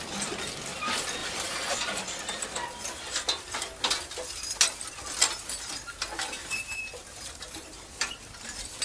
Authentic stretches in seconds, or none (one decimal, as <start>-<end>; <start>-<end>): 0.0-1.2; 1.7-6.4; 7.9-8.8

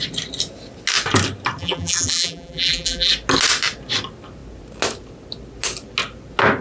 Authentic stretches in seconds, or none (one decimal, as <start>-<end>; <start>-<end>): 0.0-1.6; 3.1-6.6

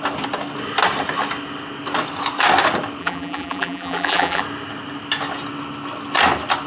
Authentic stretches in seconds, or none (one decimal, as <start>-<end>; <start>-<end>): 0.0-3.0; 4.4-6.7

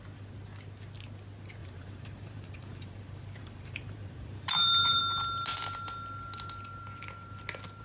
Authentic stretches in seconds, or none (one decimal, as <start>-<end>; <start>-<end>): 0.0-1.6; 5.0-7.8

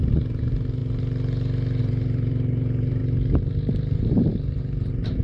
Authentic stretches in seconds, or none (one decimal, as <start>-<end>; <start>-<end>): 0.8-1.8; 3.0-3.8

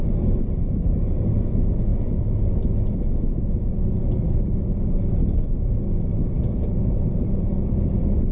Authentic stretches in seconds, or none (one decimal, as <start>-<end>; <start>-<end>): 0.0-8.3

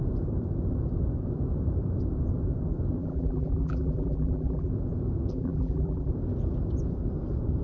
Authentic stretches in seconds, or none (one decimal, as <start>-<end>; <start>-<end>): 0.0-3.0; 4.7-5.3; 6.1-7.6